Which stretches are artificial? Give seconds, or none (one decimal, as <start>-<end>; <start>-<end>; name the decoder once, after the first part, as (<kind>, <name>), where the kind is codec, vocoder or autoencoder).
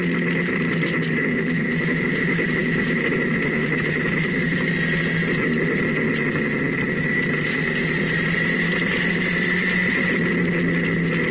1.2-4.7 (autoencoder, DAC-VAE)